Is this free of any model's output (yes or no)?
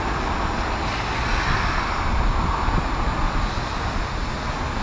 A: yes